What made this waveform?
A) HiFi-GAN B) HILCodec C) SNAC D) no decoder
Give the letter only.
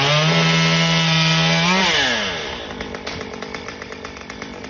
D